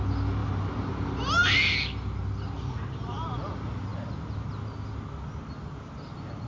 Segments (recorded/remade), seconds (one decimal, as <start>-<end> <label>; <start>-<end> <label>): 0.0-6.5 recorded